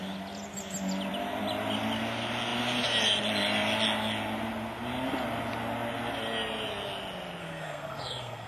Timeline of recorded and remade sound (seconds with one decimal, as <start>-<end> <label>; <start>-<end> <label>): 0.0-7.4 recorded; 7.4-8.5 remade